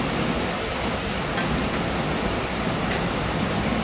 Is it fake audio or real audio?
real